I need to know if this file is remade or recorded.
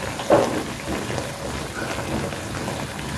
recorded